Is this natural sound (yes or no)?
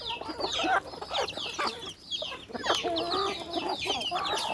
yes